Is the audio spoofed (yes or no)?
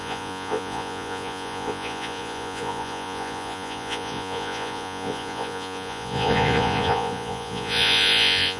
yes